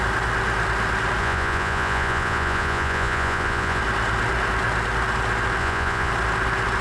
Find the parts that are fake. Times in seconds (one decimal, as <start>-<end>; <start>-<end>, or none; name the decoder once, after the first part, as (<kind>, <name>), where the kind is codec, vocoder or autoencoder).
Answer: 1.2-3.8 (vocoder, Vocos); 5.6-6.1